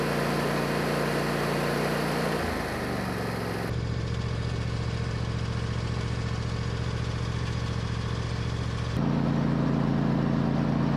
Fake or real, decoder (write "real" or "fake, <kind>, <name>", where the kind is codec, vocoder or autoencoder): real